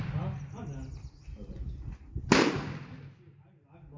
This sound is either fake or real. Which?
real